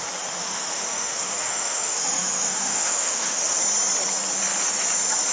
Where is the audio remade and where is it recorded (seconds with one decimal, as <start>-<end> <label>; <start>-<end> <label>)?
0.0-0.4 recorded; 0.4-3.6 remade; 3.6-5.3 recorded